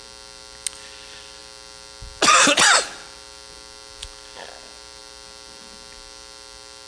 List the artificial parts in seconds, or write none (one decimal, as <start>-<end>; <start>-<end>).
none